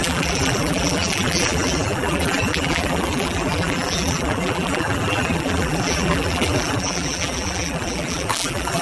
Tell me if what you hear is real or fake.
fake